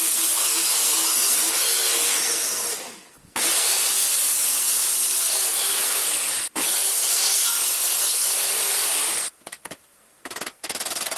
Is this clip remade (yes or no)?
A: yes